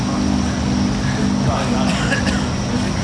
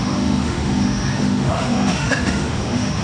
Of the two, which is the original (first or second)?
first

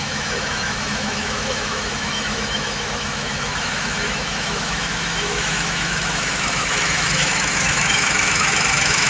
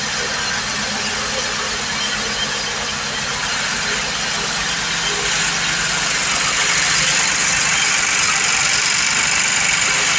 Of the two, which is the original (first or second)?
second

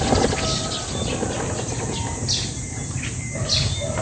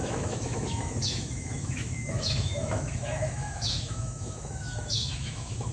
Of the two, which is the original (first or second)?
first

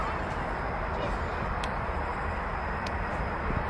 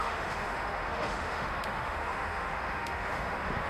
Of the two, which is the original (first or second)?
first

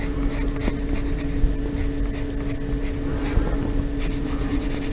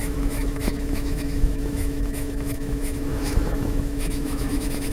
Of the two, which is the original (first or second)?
first